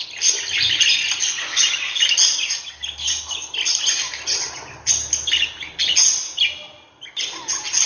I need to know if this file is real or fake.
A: real